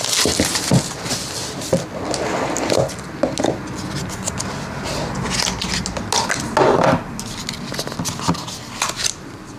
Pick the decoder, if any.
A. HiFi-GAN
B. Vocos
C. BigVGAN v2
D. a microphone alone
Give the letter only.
D